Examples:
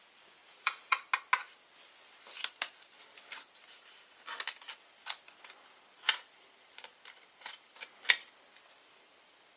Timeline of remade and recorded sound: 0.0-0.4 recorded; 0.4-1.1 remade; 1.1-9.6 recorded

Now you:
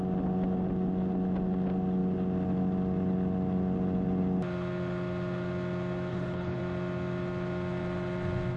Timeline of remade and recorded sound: 0.0-6.1 recorded; 6.1-6.6 remade; 6.6-8.6 recorded

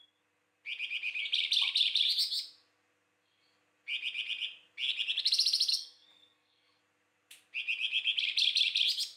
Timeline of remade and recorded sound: 0.0-5.7 recorded; 5.7-6.8 remade; 6.8-9.2 recorded

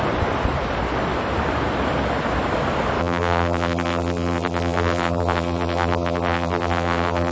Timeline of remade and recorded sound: 0.0-3.0 recorded; 3.0-7.3 remade

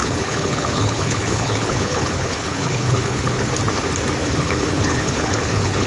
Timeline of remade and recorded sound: 0.0-3.5 remade; 3.5-4.2 recorded; 4.2-5.9 remade